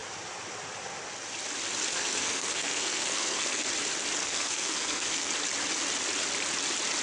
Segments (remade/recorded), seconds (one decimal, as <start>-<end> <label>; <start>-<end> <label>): 0.0-1.9 recorded; 1.9-3.7 remade; 3.7-4.2 recorded; 4.2-5.3 remade; 5.3-7.0 recorded